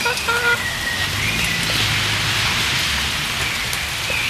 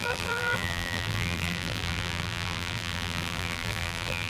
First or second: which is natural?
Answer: first